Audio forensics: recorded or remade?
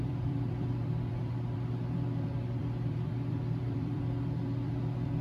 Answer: remade